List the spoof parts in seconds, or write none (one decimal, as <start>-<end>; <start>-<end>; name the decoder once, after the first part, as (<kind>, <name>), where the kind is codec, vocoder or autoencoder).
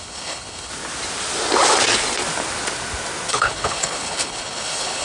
0.0-0.7 (codec, HILCodec); 3.3-5.0